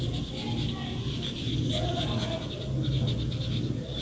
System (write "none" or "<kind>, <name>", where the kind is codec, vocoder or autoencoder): none